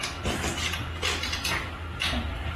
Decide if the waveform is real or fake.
real